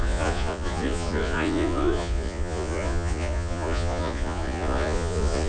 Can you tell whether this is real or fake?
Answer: fake